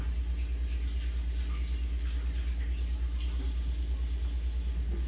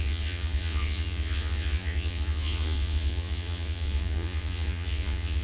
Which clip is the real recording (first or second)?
first